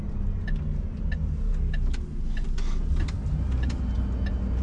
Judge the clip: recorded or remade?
recorded